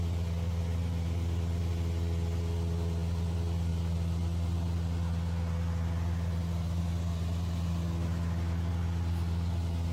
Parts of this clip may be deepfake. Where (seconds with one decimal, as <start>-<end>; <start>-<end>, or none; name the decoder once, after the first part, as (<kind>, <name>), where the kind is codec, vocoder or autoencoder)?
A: none